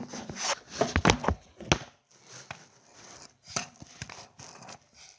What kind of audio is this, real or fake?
real